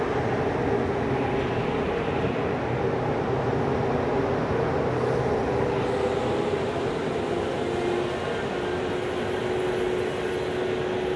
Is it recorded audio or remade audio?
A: recorded